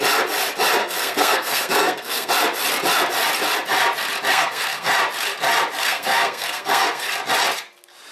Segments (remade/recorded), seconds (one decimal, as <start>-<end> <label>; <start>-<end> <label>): 0.0-0.8 recorded; 0.8-2.3 remade; 2.3-4.3 recorded; 4.3-4.9 remade; 4.9-5.8 recorded; 5.8-7.1 remade; 7.1-8.1 recorded

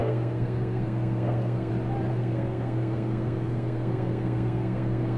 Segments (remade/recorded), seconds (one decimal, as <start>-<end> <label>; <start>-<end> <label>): 0.0-1.7 remade; 1.7-2.1 recorded; 2.1-5.2 remade

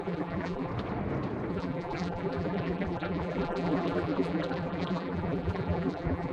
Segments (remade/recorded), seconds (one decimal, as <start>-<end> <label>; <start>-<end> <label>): 0.0-0.7 remade; 0.7-1.5 recorded; 1.5-6.3 remade

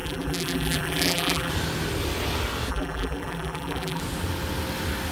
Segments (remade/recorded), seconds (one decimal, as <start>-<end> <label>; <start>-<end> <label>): 0.0-1.5 remade; 1.5-2.7 recorded; 2.7-4.0 remade; 4.0-5.1 recorded

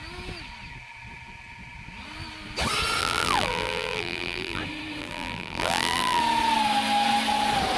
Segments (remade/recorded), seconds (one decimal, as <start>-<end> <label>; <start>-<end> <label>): 0.0-3.0 recorded; 3.0-4.6 remade; 4.6-5.0 recorded; 5.0-6.2 remade; 6.2-7.8 recorded

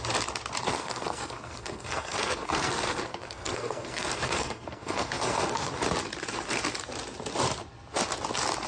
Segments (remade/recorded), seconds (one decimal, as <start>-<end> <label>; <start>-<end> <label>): 0.0-0.7 recorded; 0.7-5.7 remade; 5.7-8.7 recorded

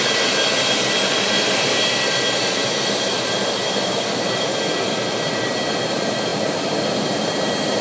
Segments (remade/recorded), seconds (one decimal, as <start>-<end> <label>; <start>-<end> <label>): 0.0-4.5 remade; 4.5-5.1 recorded; 5.1-7.8 remade